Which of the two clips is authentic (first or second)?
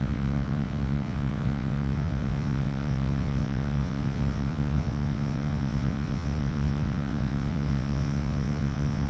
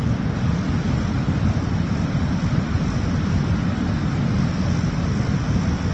second